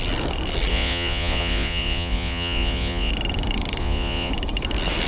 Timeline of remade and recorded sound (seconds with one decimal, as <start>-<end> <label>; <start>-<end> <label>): 0.0-0.7 recorded; 0.7-3.1 remade; 3.1-3.8 recorded; 3.8-4.3 remade; 4.3-5.1 recorded